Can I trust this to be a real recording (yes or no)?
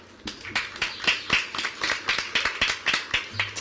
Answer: yes